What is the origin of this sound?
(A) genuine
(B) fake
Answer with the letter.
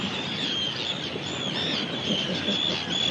A